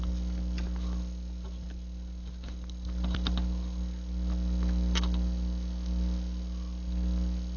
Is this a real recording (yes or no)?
yes